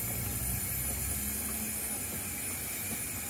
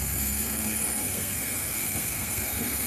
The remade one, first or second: second